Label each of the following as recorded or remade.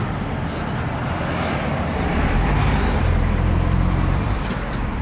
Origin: remade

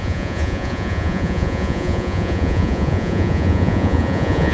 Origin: remade